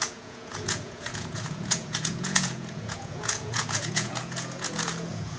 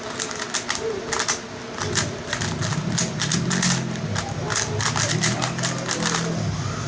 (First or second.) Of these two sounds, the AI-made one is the first